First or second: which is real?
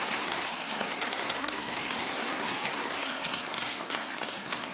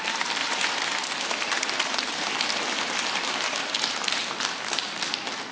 second